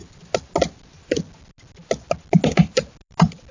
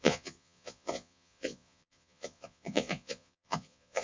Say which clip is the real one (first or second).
first